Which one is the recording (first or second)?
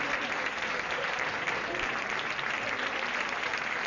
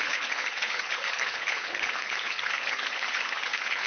first